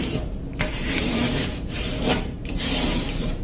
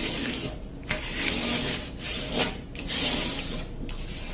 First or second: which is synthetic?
first